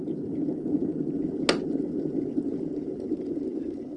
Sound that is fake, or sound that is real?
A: real